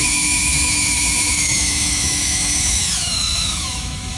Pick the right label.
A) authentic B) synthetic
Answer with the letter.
B